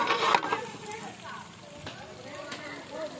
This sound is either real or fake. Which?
real